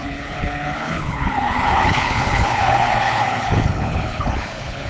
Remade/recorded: remade